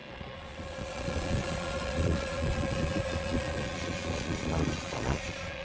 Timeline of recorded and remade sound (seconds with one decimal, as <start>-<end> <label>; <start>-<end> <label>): 0.0-5.6 remade